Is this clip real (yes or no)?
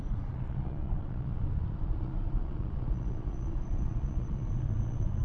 no